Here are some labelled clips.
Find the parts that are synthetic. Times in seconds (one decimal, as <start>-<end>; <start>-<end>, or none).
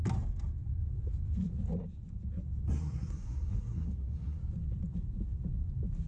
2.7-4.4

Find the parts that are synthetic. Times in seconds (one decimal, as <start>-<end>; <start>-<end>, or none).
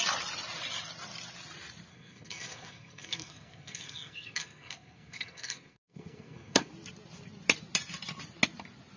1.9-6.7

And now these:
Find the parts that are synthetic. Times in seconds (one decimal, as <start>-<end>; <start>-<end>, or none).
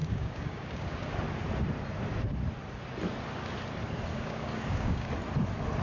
0.0-1.1; 4.1-5.1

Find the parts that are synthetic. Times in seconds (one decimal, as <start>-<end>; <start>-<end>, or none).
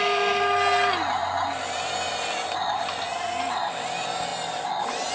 none